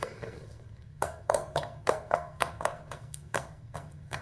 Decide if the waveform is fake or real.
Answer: fake